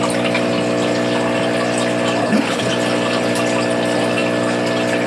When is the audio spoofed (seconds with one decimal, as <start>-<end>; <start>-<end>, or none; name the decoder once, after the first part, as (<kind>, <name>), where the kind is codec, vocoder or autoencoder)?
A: 2.2-2.7 (codec, HILCodec)